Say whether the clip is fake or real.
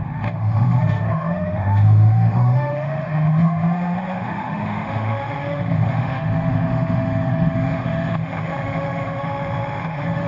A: fake